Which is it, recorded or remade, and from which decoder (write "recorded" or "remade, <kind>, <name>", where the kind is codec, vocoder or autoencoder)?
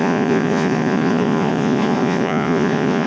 remade, vocoder, Vocos